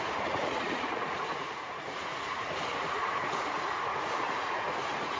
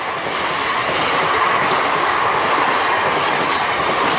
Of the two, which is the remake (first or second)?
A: first